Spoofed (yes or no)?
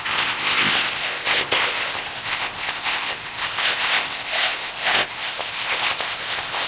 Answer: yes